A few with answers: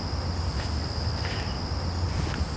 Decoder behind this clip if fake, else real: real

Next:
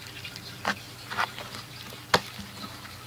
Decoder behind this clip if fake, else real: real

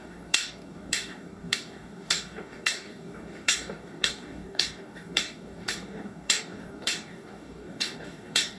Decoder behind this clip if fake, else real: fake, codec, DAC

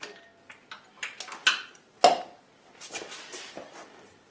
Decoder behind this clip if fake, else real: real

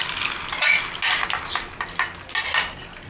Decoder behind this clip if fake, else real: real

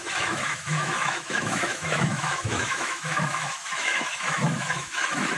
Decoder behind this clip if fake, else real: fake, autoencoder, DAC-VAE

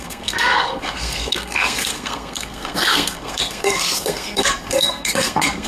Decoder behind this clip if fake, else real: fake, codec, SNAC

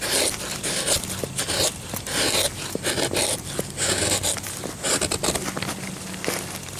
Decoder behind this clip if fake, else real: real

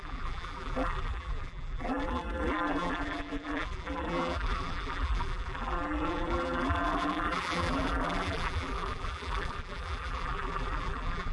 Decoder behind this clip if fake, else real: fake, vocoder, BigVGAN v2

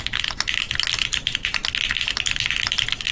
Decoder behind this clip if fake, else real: real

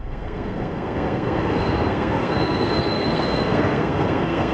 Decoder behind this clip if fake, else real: fake, codec, SNAC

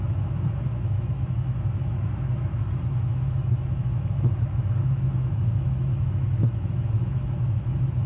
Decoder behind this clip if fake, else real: fake, autoencoder, DAC-VAE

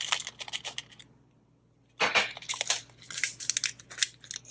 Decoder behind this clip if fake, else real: real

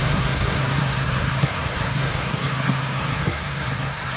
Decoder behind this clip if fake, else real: fake, codec, SNAC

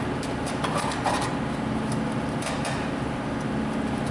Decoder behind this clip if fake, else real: real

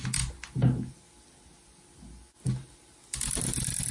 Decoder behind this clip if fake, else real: real